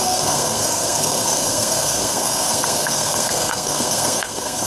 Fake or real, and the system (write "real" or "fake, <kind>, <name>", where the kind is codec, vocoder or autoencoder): fake, codec, SNAC